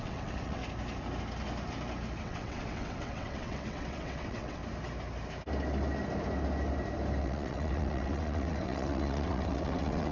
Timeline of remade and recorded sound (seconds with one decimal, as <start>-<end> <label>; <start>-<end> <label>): 0.0-0.6 remade; 0.6-2.2 recorded; 2.2-4.6 remade; 4.6-7.2 recorded; 7.2-10.1 remade